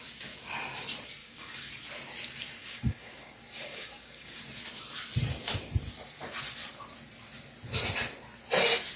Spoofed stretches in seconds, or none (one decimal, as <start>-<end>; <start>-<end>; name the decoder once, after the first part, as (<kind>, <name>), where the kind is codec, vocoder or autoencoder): 1.2-1.7 (codec, DAC); 2.6-4.4